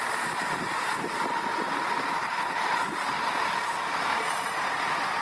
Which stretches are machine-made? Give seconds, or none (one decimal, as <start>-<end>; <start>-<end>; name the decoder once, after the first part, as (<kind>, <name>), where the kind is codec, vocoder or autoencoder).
2.2-2.8 (codec, HILCodec)